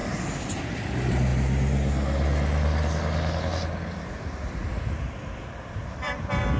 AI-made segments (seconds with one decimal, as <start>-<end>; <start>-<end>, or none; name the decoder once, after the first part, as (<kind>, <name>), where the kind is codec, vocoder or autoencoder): 0.6-1.3 (vocoder, BigVGAN v2); 4.1-4.6; 5.2-6.6